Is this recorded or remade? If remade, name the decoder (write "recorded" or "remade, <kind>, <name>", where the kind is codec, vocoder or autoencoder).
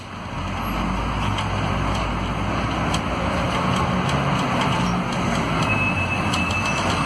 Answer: recorded